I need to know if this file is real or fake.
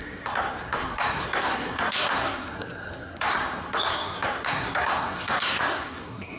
fake